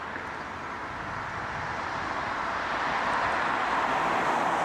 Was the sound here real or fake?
real